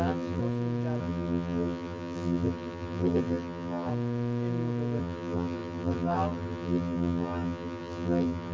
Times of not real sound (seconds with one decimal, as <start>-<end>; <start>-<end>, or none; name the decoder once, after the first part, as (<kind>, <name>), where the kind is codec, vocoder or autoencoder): 0.0-0.4 (vocoder, BigVGAN v2); 1.0-3.9; 5.0-8.5